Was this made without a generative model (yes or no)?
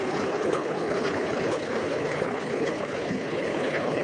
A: no